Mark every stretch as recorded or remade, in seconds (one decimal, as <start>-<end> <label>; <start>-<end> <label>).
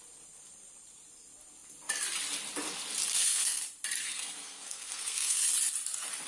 0.0-3.1 recorded; 3.1-3.6 remade; 3.6-4.0 recorded; 4.0-5.5 remade; 5.5-6.3 recorded